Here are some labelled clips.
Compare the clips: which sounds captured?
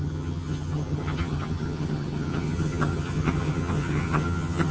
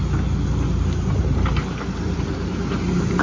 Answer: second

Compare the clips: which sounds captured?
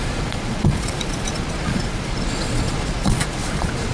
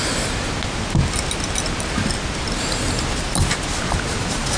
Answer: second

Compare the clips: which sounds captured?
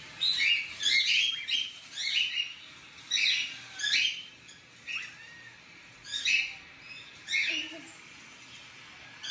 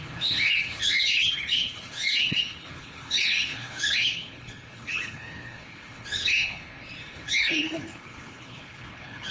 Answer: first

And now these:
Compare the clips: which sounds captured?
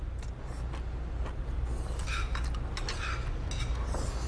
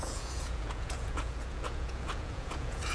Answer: first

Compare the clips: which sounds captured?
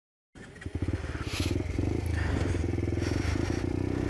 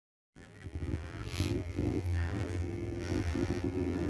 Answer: first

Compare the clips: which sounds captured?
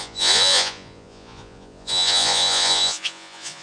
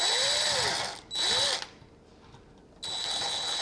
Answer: second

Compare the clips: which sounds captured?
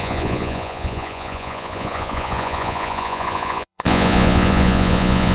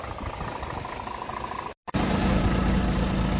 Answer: second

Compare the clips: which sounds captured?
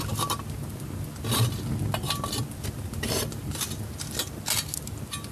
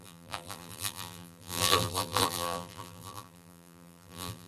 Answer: first